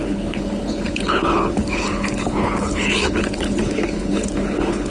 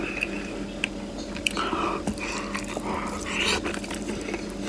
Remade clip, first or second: first